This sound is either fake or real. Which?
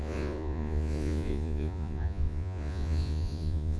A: fake